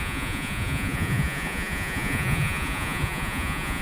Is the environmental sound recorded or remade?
remade